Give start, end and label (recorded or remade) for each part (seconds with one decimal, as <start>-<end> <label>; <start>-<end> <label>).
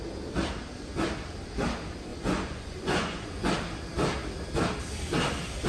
0.0-2.1 recorded; 2.1-3.5 remade; 3.5-5.7 recorded